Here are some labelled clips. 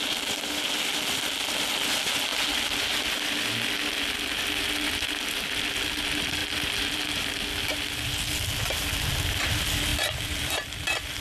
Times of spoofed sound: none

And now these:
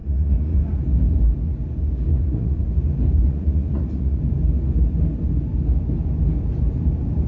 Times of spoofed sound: 0.0-0.6 (vocoder, Vocos); 2.1-2.7; 3.2-4.2

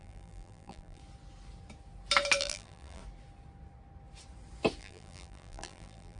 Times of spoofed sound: 0.0-1.0 (vocoder, BigVGAN v2); 2.4-3.0; 4.8-6.2

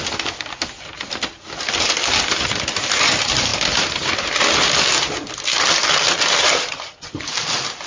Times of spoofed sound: none

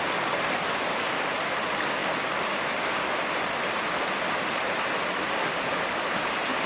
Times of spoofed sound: none

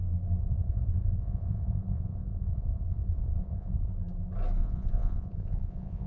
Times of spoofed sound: 0.4-3.9 (vocoder, Vocos); 4.6-6.1

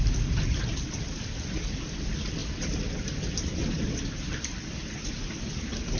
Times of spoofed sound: none

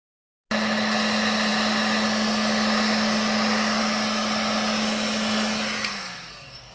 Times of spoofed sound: 5.9-6.7 (codec, SNAC)